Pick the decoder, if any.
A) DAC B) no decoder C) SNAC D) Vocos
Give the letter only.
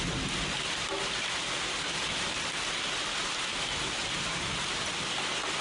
B